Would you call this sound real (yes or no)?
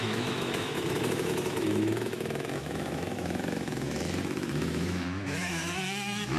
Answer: no